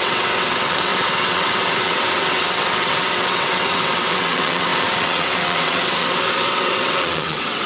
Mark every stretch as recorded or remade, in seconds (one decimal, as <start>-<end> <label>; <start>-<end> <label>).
0.0-7.7 remade